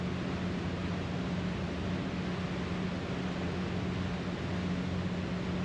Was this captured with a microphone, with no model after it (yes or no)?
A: yes